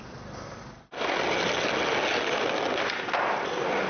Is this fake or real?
real